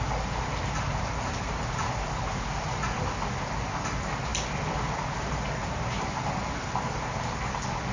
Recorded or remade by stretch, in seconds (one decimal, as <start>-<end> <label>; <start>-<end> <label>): 0.0-7.9 recorded